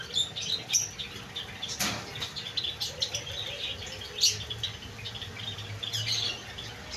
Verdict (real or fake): real